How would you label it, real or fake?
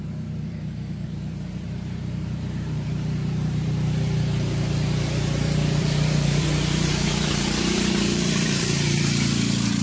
fake